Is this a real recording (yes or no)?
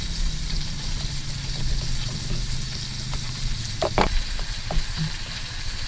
yes